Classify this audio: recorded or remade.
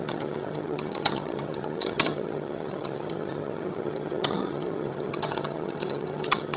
remade